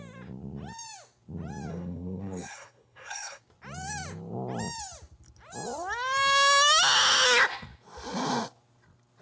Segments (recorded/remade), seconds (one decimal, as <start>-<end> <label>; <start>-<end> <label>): 0.0-1.7 recorded; 1.7-3.4 remade; 3.4-9.2 recorded